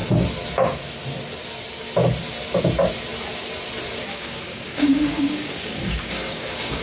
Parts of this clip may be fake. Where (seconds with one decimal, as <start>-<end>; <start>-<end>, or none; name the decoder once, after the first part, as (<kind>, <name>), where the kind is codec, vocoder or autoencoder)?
4.1-6.8 (codec, DAC)